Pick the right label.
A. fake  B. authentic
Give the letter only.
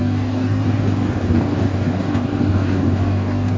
A